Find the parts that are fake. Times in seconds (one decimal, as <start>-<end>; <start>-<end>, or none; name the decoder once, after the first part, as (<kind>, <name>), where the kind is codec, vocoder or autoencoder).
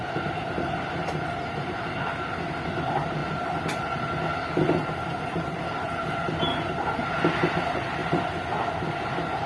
none